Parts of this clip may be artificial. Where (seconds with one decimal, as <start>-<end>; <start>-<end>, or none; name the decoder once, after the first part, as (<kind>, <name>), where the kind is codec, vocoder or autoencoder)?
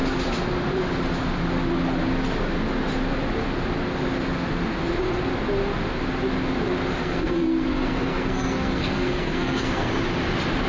7.0-9.9 (codec, SNAC)